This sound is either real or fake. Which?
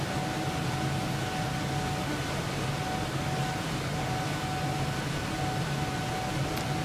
real